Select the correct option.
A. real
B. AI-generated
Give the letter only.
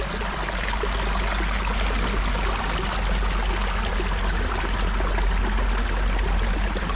A